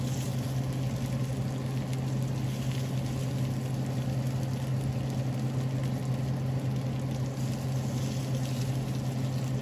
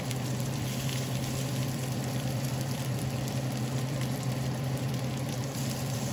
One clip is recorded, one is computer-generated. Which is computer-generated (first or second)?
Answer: second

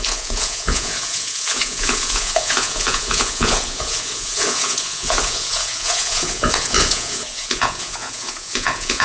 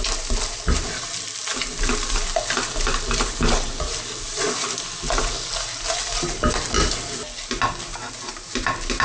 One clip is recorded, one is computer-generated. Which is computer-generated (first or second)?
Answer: first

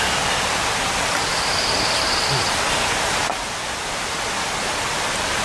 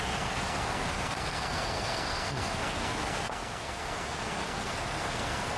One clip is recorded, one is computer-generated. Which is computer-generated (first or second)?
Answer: second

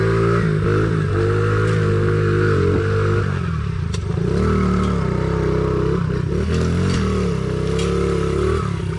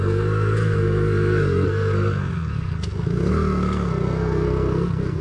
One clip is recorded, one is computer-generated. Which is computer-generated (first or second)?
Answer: second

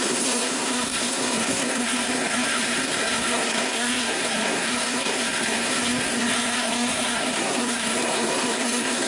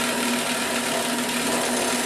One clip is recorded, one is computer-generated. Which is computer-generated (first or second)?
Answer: first